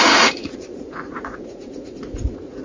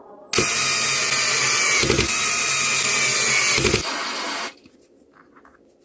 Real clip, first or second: second